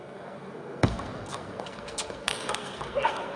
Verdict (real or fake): fake